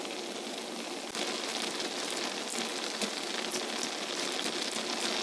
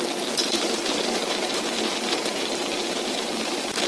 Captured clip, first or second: first